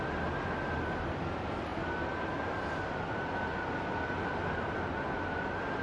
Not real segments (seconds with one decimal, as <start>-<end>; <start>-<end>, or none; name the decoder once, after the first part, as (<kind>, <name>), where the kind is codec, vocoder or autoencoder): none